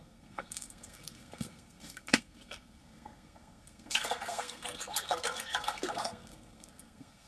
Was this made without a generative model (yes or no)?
no